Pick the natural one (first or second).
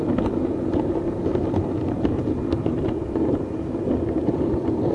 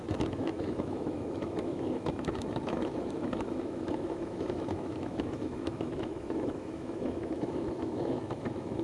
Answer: first